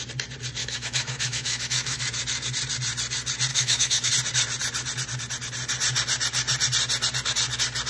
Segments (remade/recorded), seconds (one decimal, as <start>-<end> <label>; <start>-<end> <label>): 0.0-0.6 recorded; 0.6-2.0 remade; 2.0-3.5 recorded; 3.5-4.1 remade; 4.1-7.9 recorded